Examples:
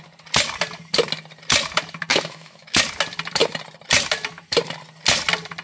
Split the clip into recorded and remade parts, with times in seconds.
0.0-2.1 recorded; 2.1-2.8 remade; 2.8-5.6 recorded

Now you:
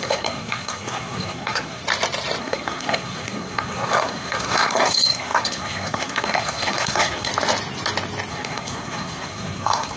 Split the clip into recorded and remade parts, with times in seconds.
0.0-1.8 remade; 1.8-2.4 recorded; 2.4-7.3 remade; 7.3-8.3 recorded; 8.3-10.0 remade

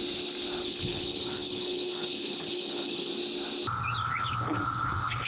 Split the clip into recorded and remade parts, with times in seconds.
0.0-0.6 recorded; 0.6-3.1 remade; 3.1-4.0 recorded; 4.0-5.3 remade

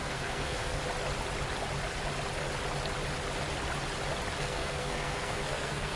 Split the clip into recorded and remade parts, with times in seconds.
0.0-0.8 remade; 0.8-4.4 recorded; 4.4-6.0 remade

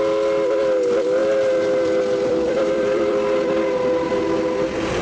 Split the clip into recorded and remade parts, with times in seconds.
0.0-1.2 recorded; 1.2-4.2 remade; 4.2-5.0 recorded

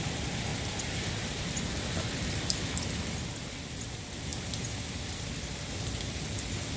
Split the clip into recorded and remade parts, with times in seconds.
0.0-6.8 recorded

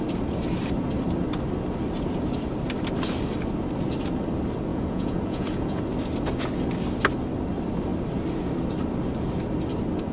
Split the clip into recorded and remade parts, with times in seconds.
0.0-4.7 recorded; 4.7-5.8 remade; 5.8-10.1 recorded